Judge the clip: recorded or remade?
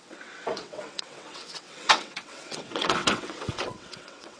remade